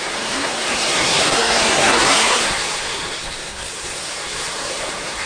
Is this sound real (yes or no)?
no